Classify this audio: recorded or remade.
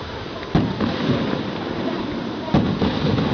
recorded